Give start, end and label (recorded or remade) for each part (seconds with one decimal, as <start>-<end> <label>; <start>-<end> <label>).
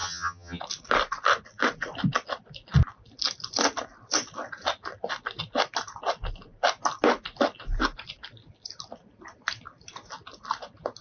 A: 0.0-0.6 remade; 0.6-11.0 recorded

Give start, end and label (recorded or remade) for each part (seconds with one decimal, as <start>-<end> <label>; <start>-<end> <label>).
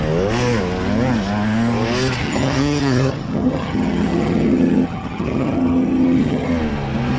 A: 0.0-2.2 recorded; 2.2-6.5 remade; 6.5-7.2 recorded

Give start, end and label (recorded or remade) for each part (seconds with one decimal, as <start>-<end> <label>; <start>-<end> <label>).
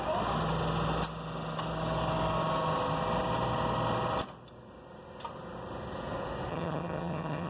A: 0.0-6.5 recorded; 6.5-7.5 remade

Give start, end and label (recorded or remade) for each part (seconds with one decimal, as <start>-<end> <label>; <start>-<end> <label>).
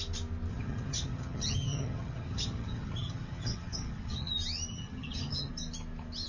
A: 0.0-0.5 recorded; 0.5-4.3 remade; 4.3-4.7 recorded; 4.7-5.5 remade; 5.5-6.3 recorded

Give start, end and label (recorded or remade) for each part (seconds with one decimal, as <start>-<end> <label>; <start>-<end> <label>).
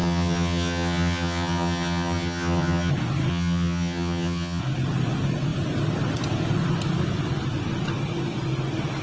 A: 0.0-2.9 remade; 2.9-3.3 recorded; 3.3-4.6 remade; 4.6-9.0 recorded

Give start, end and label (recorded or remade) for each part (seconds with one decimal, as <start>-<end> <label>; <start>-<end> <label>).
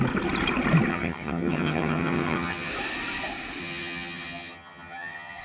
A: 0.0-0.9 recorded; 0.9-2.7 remade; 2.7-3.6 recorded; 3.6-5.4 remade